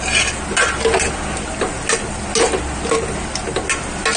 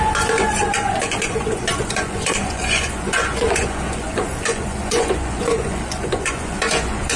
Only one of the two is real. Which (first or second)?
first